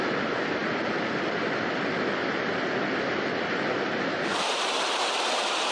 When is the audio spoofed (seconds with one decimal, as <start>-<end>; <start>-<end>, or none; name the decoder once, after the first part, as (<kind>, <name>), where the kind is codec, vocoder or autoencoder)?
none